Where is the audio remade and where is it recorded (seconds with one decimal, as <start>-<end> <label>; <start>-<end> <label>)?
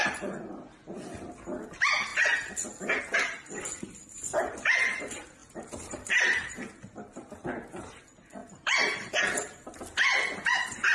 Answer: 0.0-5.4 recorded; 5.4-6.6 remade; 6.6-8.4 recorded; 8.4-9.1 remade; 9.1-10.9 recorded